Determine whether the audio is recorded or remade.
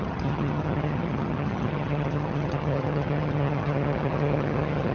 remade